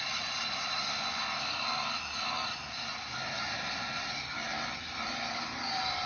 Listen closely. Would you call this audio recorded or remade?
remade